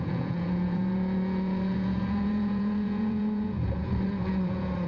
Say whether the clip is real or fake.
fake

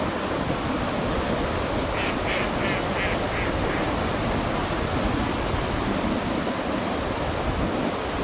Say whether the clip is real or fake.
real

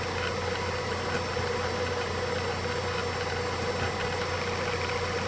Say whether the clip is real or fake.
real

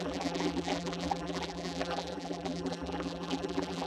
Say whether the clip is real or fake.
fake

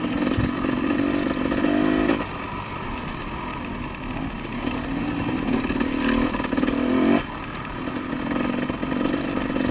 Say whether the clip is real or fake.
real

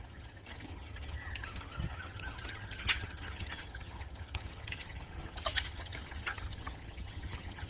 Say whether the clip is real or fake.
fake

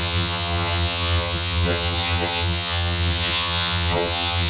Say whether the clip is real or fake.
fake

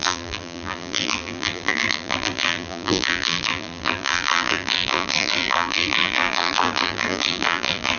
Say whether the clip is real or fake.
fake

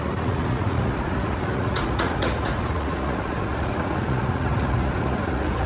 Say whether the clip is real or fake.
fake